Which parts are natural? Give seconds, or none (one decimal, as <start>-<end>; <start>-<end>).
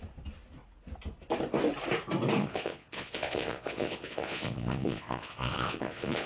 0.0-2.4